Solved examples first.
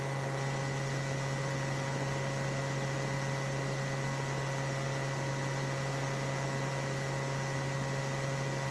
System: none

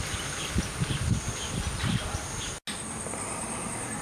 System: none